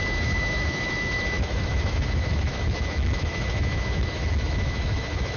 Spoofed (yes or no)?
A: yes